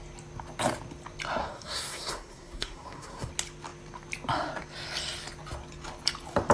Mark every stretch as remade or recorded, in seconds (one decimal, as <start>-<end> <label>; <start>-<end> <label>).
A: 0.0-1.4 recorded; 1.4-3.3 remade; 3.3-6.5 recorded